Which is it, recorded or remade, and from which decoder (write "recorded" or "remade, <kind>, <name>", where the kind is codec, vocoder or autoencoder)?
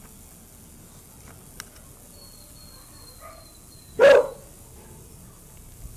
recorded